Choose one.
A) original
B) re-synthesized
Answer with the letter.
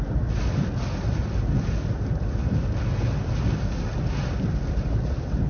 A